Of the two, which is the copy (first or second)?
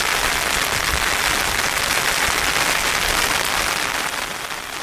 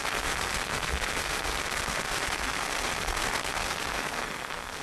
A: second